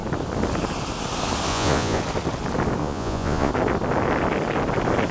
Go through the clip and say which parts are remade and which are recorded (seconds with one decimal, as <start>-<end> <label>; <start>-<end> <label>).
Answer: 0.0-1.5 recorded; 1.5-2.0 remade; 2.0-2.8 recorded; 2.8-3.5 remade; 3.5-5.1 recorded